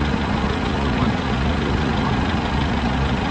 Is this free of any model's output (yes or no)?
no